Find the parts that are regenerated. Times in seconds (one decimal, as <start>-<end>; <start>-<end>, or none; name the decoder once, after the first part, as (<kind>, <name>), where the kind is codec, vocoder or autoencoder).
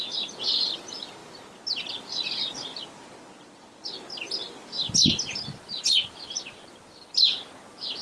none